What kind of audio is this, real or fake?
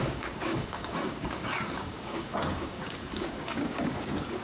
fake